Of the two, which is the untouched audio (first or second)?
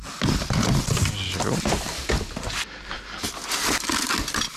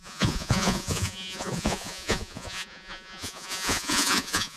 first